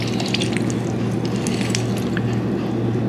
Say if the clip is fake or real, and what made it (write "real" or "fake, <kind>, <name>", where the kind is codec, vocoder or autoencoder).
real